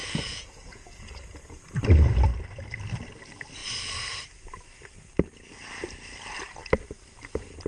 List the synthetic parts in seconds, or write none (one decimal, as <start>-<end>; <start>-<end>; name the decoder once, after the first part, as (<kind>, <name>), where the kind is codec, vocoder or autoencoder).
0.0-1.6 (vocoder, Vocos)